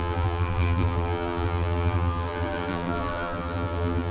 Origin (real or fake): fake